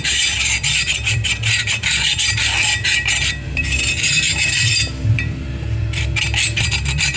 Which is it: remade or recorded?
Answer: remade